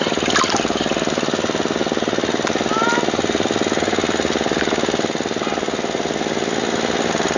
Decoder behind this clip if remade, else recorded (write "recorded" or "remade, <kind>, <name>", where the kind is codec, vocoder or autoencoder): recorded